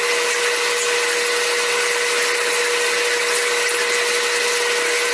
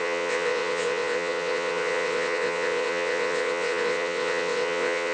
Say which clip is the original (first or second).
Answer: first